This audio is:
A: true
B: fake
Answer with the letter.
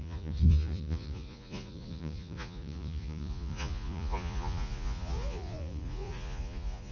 B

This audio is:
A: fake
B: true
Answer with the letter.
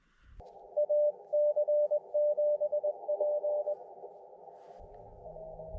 B